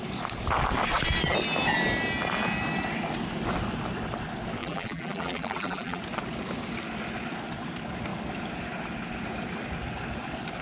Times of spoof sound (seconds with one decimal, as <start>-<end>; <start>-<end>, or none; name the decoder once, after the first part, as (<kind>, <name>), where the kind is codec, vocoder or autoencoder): 4.6-6.0 (vocoder, BigVGAN v2)